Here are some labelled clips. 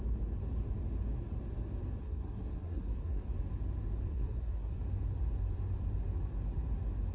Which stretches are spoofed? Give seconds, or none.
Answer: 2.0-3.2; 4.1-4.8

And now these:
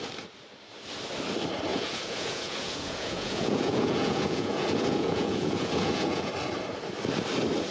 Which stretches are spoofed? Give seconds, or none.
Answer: 1.7-6.3

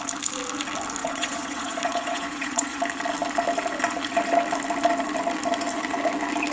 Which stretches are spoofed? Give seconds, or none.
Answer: 1.0-2.8